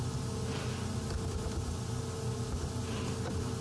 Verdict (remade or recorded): recorded